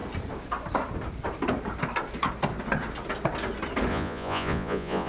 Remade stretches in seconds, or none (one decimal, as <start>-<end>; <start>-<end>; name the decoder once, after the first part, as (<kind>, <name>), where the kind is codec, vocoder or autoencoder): 3.9-5.1 (vocoder, Vocos)